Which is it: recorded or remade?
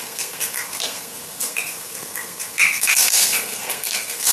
remade